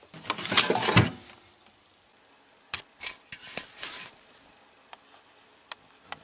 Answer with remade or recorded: recorded